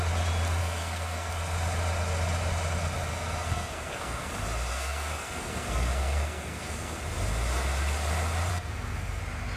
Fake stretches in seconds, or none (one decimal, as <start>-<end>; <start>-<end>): 0.6-1.3; 3.1-4.3; 4.7-7.0; 8.5-9.2